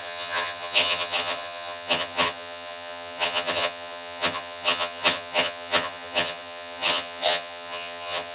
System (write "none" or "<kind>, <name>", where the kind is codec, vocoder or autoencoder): vocoder, HiFi-GAN